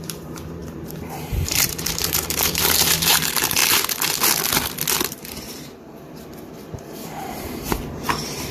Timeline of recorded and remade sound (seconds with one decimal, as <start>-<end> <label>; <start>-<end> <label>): 0.0-3.6 remade; 3.6-5.1 recorded; 5.1-8.5 remade